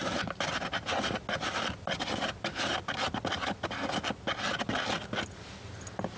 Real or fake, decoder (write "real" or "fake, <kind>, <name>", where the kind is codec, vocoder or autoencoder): real